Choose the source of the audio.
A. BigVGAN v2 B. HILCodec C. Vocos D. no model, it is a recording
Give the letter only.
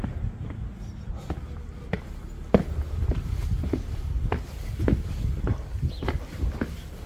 D